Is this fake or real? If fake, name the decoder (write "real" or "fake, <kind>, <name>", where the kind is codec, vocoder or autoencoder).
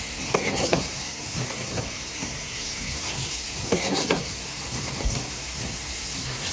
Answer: fake, codec, SNAC